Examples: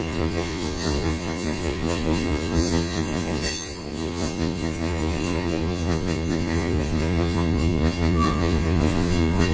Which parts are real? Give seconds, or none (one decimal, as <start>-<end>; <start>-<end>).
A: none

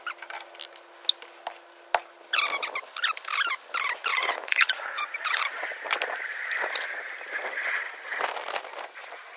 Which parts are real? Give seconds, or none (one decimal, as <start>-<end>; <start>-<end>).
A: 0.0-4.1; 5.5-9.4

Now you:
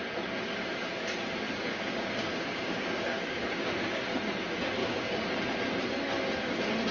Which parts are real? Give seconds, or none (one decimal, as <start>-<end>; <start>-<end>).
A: 0.0-1.7; 4.1-4.8; 5.3-6.9